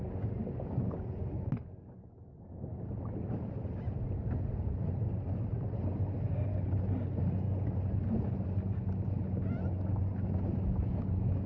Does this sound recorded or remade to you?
recorded